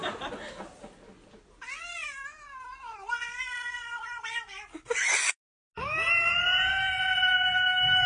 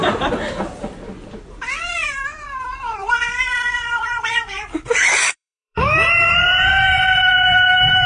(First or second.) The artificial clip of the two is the second